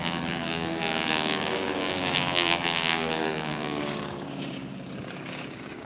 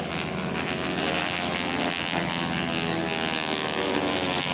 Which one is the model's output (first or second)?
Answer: first